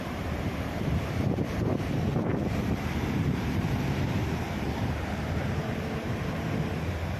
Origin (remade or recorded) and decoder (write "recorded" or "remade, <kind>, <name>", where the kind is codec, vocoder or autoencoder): remade, vocoder, BigVGAN v2